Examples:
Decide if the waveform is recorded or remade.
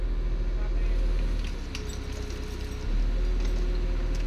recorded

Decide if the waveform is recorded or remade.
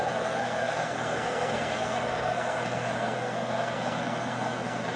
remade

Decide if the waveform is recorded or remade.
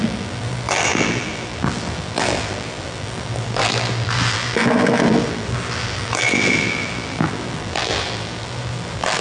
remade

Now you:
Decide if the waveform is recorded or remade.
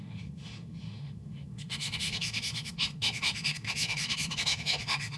remade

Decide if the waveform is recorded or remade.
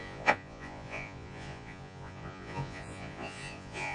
remade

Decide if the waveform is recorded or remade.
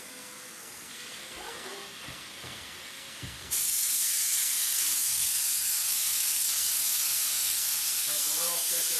remade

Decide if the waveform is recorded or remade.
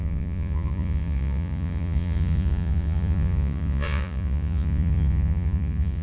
remade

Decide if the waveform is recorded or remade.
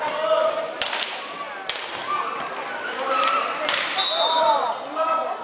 recorded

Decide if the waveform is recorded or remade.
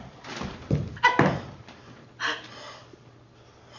recorded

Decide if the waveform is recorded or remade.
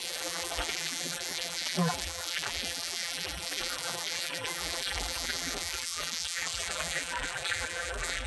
remade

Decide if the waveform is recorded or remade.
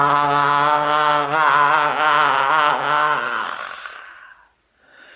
recorded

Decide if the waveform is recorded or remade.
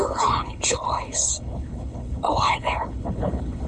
remade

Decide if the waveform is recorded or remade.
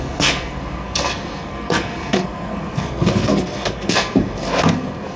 remade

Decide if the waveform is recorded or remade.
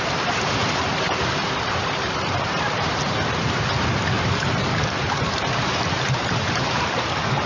remade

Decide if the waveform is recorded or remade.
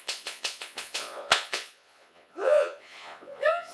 remade